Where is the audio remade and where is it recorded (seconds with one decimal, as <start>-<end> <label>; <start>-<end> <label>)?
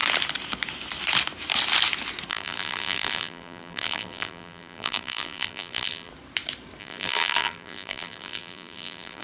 0.0-2.3 recorded; 2.3-6.1 remade; 6.1-6.8 recorded; 6.8-9.2 remade